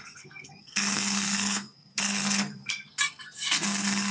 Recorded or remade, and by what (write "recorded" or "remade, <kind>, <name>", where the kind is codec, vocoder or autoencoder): remade, codec, SNAC